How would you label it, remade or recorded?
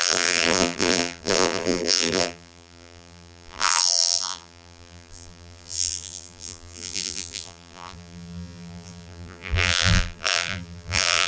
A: remade